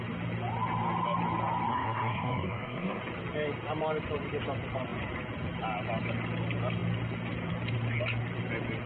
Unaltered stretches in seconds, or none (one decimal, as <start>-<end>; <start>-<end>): 0.0-1.7; 3.0-8.9